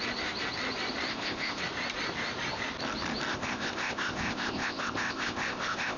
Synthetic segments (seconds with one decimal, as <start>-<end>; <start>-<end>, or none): 1.1-1.6; 3.3-6.0